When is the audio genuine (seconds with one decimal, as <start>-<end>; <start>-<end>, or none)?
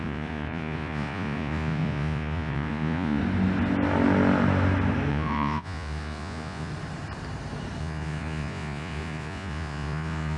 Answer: 3.2-5.1; 6.7-7.8